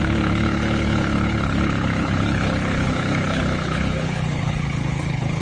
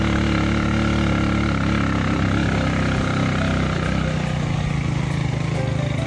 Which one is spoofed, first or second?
first